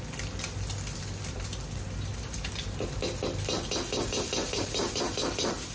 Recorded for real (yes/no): yes